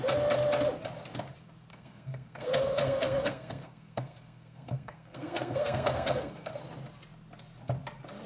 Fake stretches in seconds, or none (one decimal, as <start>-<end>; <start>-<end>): 1.7-6.5